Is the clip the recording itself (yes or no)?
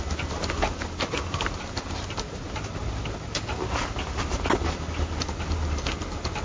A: yes